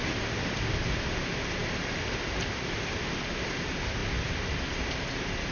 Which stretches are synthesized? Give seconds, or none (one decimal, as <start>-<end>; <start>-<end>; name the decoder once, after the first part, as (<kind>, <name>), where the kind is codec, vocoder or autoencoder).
1.6-2.6 (vocoder, BigVGAN v2); 4.0-4.5